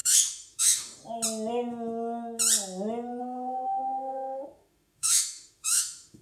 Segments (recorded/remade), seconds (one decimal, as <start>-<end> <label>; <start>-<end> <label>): 0.0-1.0 remade; 1.0-3.2 recorded; 3.2-6.2 remade